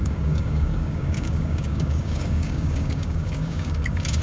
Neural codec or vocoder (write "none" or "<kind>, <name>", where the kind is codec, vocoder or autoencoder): codec, DAC